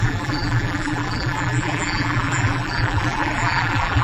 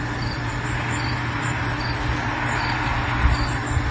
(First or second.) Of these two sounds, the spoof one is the first